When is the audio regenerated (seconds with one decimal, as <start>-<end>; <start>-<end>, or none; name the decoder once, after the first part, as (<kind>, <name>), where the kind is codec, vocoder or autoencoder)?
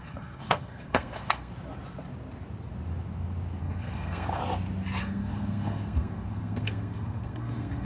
0.0-1.5 (codec, SNAC); 3.6-4.4; 5.0-7.8